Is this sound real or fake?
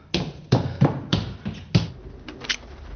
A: real